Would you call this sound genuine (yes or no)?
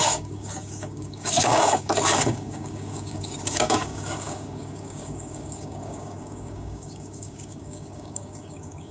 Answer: no